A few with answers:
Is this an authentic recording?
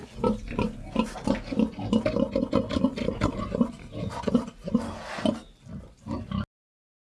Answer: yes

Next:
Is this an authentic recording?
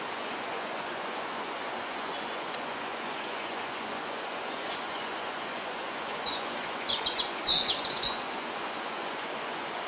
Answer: no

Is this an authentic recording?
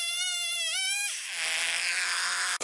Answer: no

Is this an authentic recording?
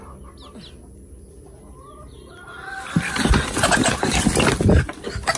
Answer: yes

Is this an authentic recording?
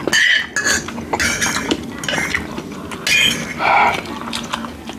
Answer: yes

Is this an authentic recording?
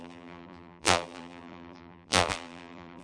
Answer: no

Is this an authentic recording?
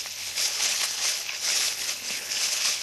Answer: no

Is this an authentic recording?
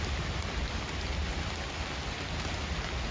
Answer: yes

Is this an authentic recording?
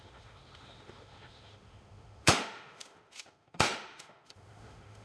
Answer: no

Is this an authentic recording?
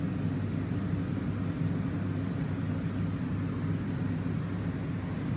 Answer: yes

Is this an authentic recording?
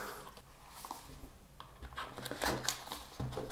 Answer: yes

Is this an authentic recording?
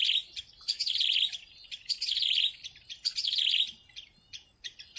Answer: yes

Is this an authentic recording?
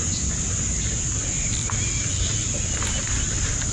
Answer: no